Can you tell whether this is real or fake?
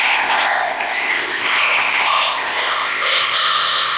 fake